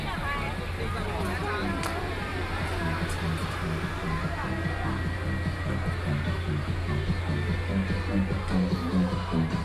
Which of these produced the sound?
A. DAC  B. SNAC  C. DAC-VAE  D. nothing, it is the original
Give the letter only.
D